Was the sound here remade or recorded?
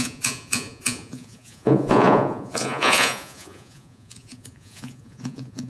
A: remade